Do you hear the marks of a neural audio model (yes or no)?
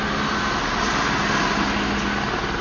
no